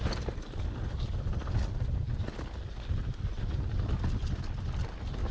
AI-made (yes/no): no